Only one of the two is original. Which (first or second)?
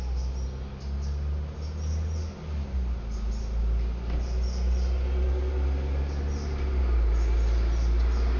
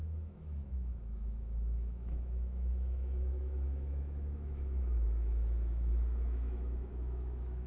first